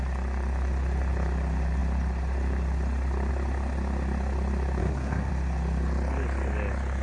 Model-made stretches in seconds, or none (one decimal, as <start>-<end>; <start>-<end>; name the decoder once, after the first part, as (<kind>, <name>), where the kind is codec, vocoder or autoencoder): 4.8-5.3 (codec, SNAC)